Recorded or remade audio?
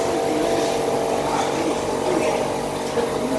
recorded